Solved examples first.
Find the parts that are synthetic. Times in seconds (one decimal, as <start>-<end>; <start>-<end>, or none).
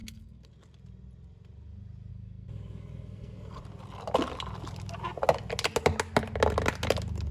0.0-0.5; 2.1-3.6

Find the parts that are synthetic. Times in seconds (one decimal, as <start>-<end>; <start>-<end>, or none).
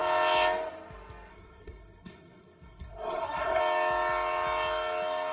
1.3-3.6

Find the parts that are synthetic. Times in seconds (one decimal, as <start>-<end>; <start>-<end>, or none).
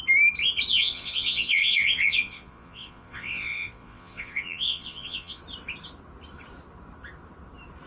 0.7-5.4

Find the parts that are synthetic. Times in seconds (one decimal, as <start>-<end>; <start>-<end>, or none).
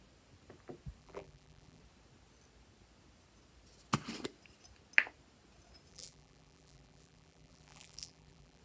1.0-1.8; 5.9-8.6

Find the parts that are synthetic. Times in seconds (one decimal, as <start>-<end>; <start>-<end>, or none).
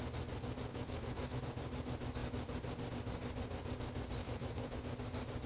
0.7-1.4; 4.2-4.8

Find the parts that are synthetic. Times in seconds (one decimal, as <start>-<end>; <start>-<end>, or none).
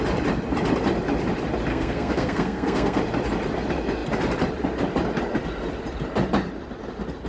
1.7-3.0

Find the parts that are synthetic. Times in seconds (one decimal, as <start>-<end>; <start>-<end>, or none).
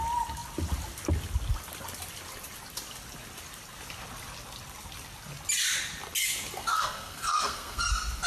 6.6-7.9